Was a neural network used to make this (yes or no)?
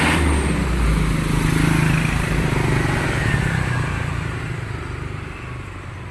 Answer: no